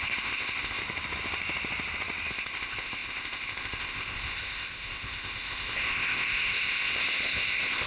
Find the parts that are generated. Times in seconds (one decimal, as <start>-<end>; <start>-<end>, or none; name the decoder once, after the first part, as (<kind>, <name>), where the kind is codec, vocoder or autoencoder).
0.0-0.8 (codec, ZipCodec); 2.3-7.9